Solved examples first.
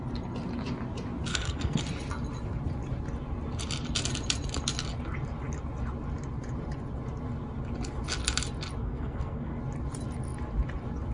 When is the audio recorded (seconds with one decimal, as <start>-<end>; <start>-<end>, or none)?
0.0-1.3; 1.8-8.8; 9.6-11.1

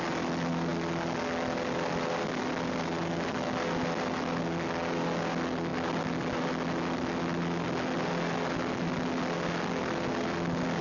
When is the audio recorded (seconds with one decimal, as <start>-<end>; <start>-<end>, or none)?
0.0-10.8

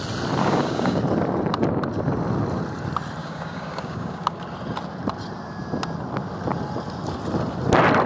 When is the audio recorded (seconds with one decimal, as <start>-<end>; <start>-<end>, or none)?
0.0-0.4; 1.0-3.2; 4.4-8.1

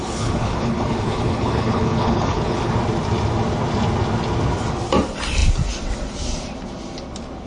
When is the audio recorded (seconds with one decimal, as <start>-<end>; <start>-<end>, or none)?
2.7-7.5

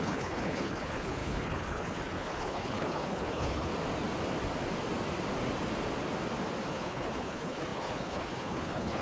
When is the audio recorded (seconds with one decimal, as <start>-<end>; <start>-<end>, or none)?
3.7-6.7

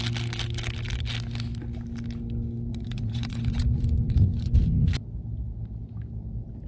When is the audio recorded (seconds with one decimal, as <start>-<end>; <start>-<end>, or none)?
0.0-2.7; 4.6-6.7

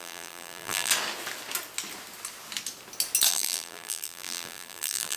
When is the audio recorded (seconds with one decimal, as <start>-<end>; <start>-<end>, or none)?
0.9-3.3